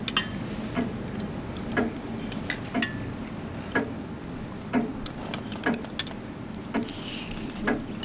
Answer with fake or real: real